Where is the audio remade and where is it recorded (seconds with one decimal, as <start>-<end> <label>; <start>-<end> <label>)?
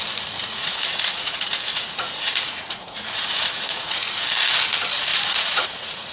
0.0-0.4 recorded; 0.4-4.1 remade; 4.1-5.1 recorded; 5.1-6.1 remade